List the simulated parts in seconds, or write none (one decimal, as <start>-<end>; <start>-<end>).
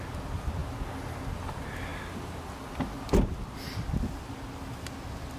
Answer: none